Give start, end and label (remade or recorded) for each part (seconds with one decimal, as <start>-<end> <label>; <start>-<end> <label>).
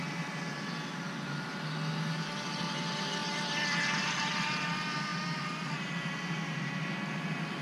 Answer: 0.0-7.6 recorded